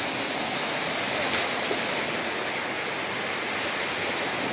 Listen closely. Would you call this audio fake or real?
real